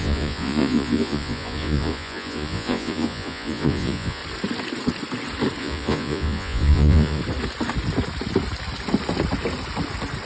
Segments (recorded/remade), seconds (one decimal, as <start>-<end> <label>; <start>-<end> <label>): 0.0-4.2 remade; 4.2-5.6 recorded; 5.6-7.2 remade; 7.2-10.3 recorded